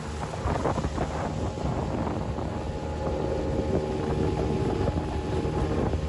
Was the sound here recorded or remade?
recorded